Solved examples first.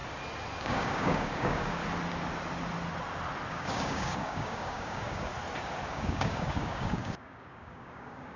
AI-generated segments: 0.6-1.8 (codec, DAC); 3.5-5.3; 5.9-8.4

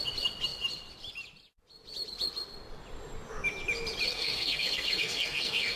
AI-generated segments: 4.1-5.8 (codec, SNAC)

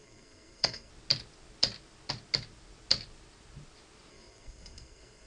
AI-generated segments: 0.0-0.9 (codec, SNAC); 4.1-5.3

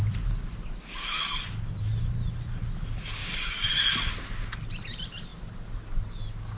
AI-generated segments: 3.2-3.7 (codec, DAC)

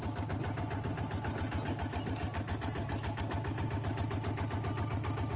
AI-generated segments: none

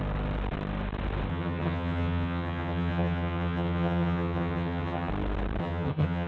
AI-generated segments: 1.3-5.1 (vocoder, HiFi-GAN); 5.6-6.3

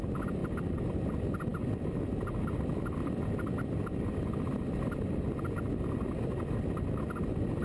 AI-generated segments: none

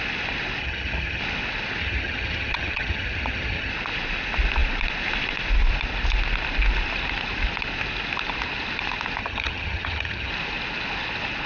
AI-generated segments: 0.6-1.2 (vocoder, HiFi-GAN); 1.8-3.7; 9.2-10.3